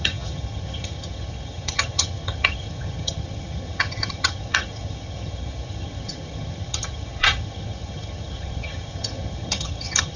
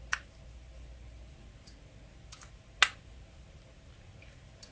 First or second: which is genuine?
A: second